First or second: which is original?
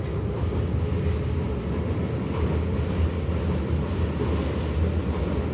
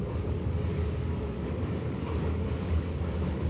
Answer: first